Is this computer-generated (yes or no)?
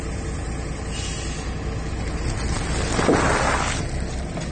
no